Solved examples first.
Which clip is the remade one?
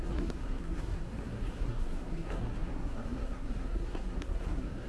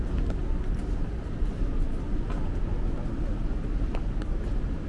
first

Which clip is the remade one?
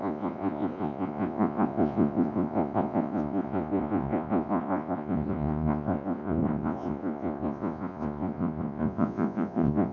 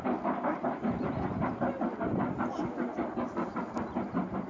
first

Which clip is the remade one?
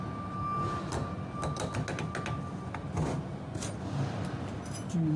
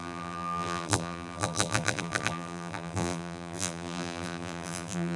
second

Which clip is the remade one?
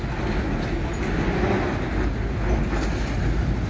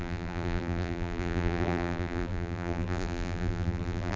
second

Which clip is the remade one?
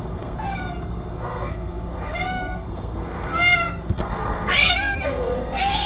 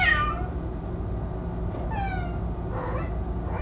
first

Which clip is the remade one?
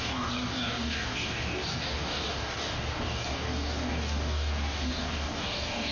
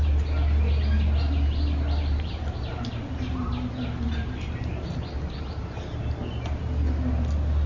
first